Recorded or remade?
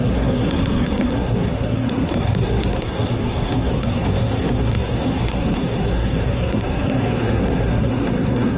remade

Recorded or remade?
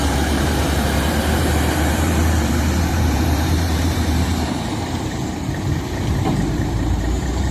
remade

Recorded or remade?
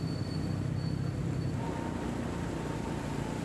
recorded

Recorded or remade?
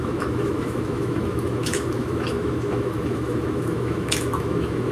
remade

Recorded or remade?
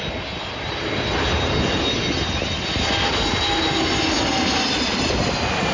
recorded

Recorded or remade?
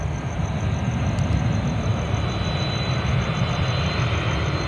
recorded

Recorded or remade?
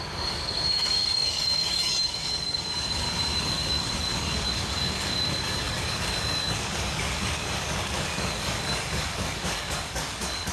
remade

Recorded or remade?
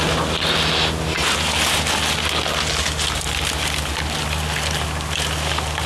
recorded